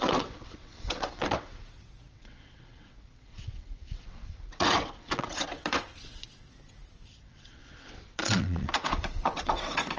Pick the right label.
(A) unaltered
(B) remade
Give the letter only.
B